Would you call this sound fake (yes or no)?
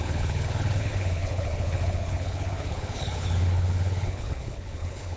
yes